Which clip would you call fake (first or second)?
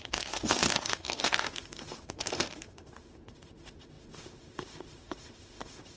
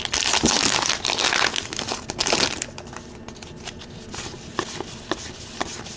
first